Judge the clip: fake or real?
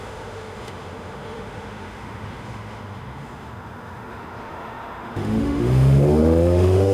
fake